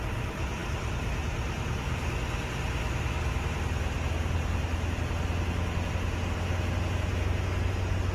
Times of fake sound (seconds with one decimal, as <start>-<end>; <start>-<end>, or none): none